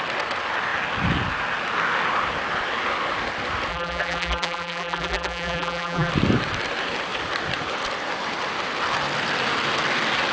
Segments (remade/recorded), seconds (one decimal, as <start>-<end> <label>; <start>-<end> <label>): 0.0-3.7 recorded; 3.7-6.1 remade; 6.1-10.3 recorded